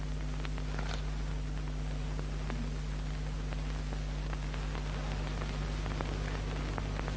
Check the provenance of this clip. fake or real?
real